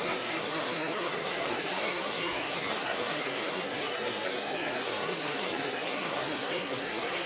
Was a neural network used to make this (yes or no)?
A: yes